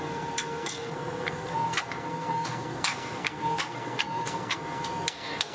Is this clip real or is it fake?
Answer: fake